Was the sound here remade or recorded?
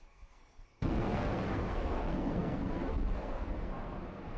remade